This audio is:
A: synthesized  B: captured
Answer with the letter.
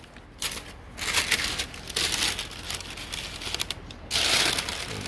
B